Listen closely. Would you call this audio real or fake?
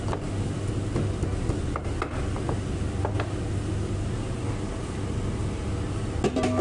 real